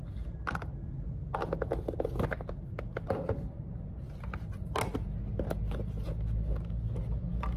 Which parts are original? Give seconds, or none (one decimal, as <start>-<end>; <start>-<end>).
0.0-7.6